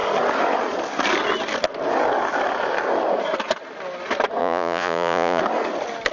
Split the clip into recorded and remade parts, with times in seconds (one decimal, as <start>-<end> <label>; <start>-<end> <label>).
0.0-4.4 recorded; 4.4-5.4 remade; 5.4-6.1 recorded